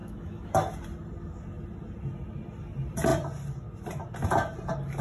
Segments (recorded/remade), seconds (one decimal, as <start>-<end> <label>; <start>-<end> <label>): 0.0-0.5 remade; 0.5-5.0 recorded